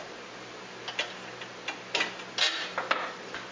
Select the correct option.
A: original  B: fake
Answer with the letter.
A